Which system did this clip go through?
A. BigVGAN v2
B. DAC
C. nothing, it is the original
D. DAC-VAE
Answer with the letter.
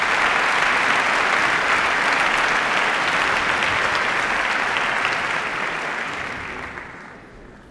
C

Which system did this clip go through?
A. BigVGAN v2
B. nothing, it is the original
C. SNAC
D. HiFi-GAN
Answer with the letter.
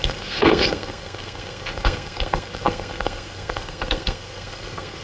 C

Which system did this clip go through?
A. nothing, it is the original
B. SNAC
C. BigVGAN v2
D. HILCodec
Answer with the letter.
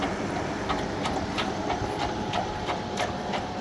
A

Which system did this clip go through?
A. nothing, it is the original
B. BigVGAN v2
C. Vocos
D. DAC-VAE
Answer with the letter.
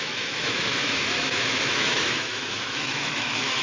D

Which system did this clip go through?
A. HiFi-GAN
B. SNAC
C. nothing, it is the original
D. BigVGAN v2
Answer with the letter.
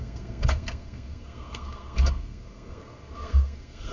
B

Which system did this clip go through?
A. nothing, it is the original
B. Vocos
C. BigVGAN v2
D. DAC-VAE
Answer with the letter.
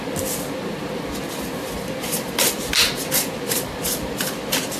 A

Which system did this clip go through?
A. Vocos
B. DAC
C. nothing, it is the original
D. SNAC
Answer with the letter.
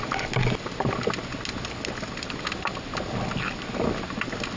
C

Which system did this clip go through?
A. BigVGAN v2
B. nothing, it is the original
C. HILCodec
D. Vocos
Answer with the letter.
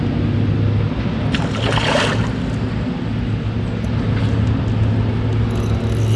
B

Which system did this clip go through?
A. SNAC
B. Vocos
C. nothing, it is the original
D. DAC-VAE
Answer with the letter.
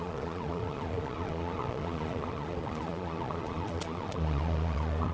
B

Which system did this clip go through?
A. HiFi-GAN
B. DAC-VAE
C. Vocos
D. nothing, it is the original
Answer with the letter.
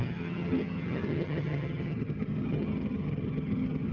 A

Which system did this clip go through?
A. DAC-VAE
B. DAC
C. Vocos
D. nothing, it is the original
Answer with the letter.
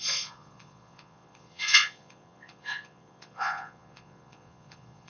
C